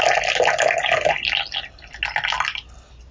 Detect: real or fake real